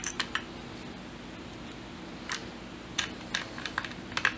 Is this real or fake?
real